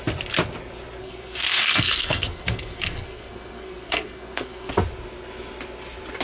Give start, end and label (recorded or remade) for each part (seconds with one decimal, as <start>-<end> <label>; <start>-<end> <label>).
0.0-1.0 recorded; 1.0-4.7 remade; 4.7-6.2 recorded